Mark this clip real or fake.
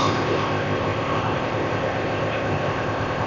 fake